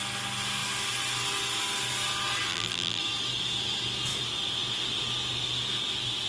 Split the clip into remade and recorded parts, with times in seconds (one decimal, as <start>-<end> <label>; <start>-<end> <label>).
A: 0.0-2.5 recorded; 2.5-3.0 remade; 3.0-6.3 recorded